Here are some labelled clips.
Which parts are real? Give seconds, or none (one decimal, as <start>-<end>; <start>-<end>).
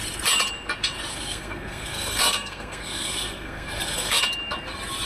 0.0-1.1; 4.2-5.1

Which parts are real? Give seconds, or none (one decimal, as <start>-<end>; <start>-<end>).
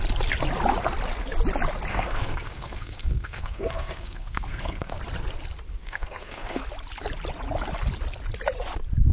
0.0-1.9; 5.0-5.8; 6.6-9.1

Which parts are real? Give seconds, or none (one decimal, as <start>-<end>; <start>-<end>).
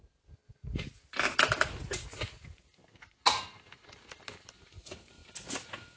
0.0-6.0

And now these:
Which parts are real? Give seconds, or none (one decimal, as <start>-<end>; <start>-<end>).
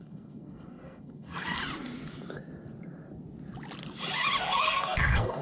1.6-4.4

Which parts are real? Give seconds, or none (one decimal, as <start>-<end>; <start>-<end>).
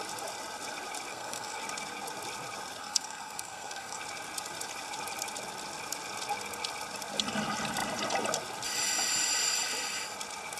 0.0-1.1; 1.6-2.8; 4.0-10.6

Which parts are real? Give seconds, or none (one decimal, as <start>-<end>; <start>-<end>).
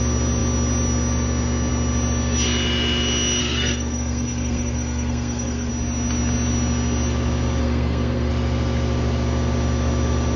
0.0-3.4; 5.7-7.6; 8.3-10.4